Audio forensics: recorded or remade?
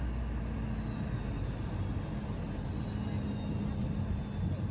recorded